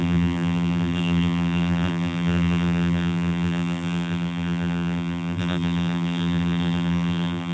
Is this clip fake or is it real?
fake